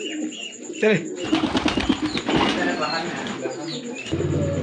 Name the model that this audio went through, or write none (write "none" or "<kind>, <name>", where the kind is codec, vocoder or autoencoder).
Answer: none